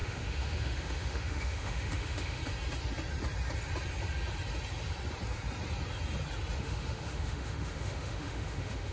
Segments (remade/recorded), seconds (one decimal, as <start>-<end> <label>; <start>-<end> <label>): 0.0-2.4 remade; 2.4-6.6 recorded; 6.6-8.9 remade